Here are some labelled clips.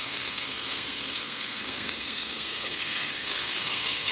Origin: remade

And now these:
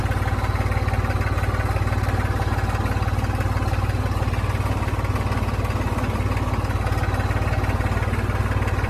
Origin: recorded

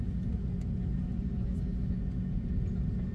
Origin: recorded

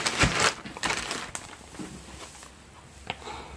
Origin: recorded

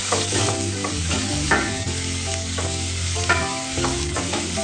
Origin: remade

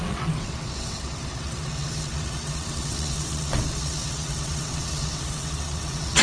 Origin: remade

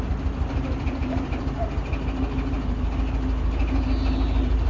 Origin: recorded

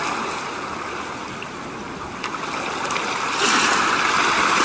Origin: recorded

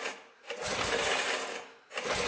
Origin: recorded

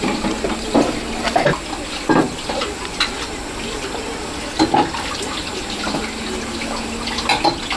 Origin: recorded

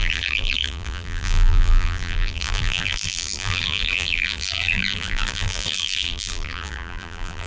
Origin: remade